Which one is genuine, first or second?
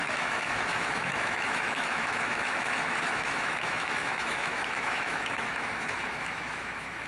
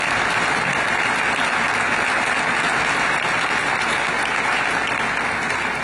second